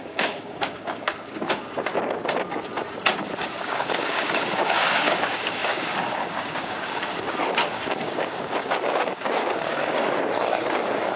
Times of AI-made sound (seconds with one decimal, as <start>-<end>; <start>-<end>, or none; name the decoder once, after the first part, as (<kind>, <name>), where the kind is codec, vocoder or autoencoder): 0.0-1.9 (codec, DAC); 3.4-11.2